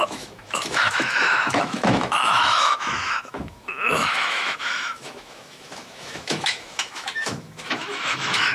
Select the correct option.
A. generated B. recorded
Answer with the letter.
A